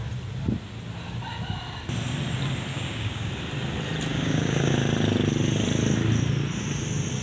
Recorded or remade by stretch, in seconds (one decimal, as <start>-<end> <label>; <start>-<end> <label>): 0.0-2.7 recorded; 2.7-3.3 remade; 3.3-4.1 recorded; 4.1-4.7 remade; 4.7-7.2 recorded